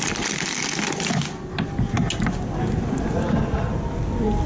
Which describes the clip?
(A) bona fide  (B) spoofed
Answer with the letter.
A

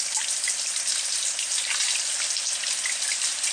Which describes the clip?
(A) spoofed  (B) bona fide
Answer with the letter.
B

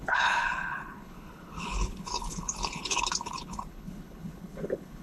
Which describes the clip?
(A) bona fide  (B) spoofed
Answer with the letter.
B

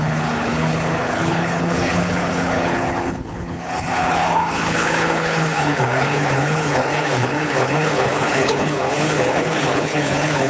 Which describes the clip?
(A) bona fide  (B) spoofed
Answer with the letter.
B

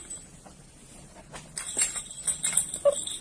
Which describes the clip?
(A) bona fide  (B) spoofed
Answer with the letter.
A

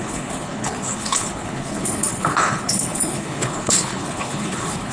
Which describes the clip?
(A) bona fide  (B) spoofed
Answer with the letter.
B